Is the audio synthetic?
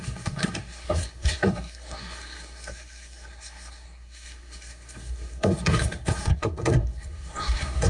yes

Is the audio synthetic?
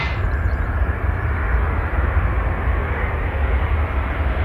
no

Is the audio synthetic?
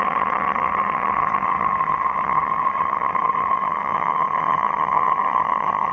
yes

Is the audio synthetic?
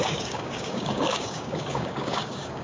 yes